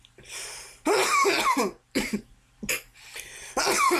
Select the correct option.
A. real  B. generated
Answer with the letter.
B